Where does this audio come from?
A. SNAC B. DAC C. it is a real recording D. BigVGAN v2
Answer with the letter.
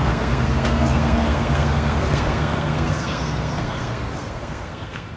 A